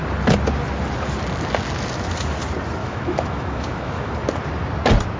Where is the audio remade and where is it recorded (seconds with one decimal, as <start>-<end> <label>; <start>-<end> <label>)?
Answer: 0.0-2.8 recorded; 2.8-4.1 remade; 4.1-5.2 recorded

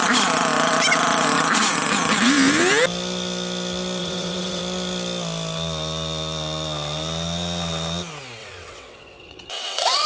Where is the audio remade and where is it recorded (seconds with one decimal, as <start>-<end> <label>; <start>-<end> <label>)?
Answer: 0.0-4.0 recorded; 4.0-4.6 remade; 4.6-8.4 recorded; 8.4-10.1 remade

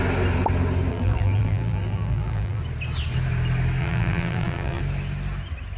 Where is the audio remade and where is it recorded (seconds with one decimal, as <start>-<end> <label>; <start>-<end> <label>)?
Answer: 0.0-0.9 recorded; 0.9-2.6 remade; 2.6-3.8 recorded; 3.8-4.8 remade; 4.8-5.8 recorded

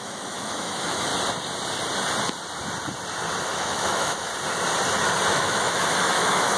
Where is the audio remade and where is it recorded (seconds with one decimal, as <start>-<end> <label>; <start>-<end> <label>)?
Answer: 0.0-1.1 remade; 1.1-3.4 recorded; 3.4-4.3 remade; 4.3-5.3 recorded; 5.3-6.6 remade